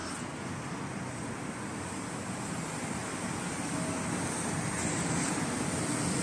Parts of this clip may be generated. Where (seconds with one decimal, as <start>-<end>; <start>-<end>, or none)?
none